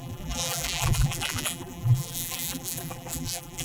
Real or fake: fake